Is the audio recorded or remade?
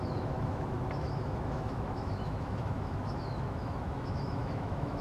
remade